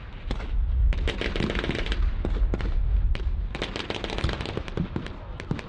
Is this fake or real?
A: real